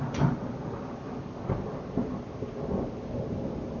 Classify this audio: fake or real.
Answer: real